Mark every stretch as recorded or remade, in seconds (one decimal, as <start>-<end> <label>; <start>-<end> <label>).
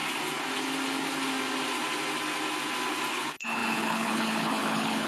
0.0-3.1 recorded; 3.1-5.1 remade